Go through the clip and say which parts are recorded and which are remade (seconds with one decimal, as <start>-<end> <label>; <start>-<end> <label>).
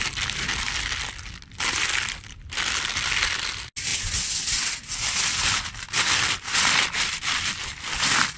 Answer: 0.0-8.4 recorded